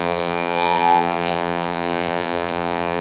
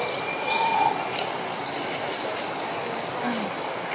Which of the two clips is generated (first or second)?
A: first